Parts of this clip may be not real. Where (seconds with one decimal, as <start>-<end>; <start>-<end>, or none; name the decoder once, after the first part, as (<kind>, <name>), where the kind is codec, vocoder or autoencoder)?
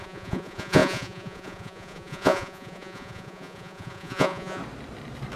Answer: 0.0-4.6 (vocoder, Vocos)